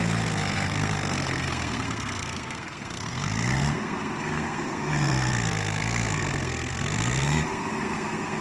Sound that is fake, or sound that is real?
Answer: fake